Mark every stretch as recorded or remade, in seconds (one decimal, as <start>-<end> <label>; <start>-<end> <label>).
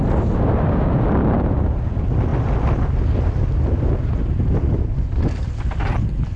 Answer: 0.0-6.4 recorded